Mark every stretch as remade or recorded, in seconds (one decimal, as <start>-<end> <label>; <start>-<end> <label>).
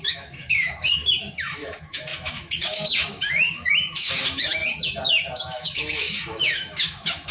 0.0-4.6 remade; 4.6-5.1 recorded; 5.1-7.3 remade